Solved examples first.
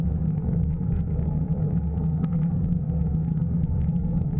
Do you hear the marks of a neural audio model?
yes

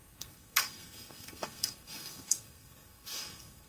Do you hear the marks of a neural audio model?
yes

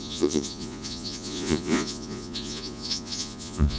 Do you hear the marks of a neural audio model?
yes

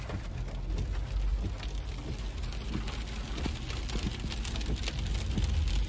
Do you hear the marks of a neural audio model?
no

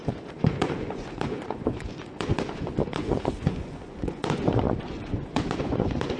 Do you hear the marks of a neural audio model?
yes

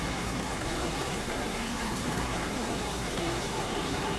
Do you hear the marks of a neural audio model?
yes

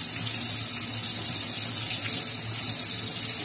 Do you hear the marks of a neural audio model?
no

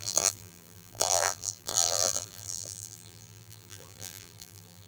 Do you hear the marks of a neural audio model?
yes